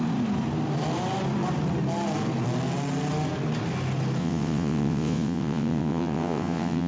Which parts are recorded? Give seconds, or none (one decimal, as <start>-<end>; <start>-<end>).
0.0-4.2

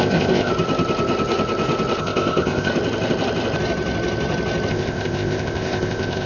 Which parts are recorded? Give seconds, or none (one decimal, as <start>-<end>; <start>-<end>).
0.5-2.0; 2.7-4.7

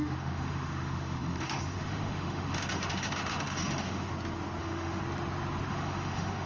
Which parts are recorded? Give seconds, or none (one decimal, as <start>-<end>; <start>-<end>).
4.1-4.6; 5.0-5.7

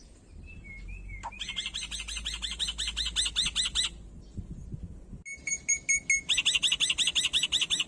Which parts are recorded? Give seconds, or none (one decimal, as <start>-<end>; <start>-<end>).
0.0-7.9

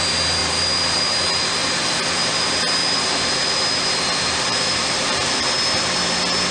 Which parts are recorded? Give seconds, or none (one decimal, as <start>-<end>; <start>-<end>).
0.0-0.4; 1.0-2.8; 5.4-6.5